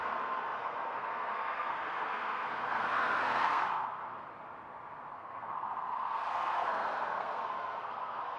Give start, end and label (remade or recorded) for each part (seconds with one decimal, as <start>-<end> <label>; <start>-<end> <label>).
0.0-4.0 remade; 4.0-5.1 recorded; 5.1-8.4 remade